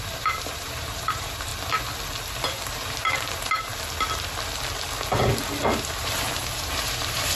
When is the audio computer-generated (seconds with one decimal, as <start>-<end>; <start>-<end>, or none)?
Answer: 0.0-1.5; 2.5-3.7; 6.0-7.4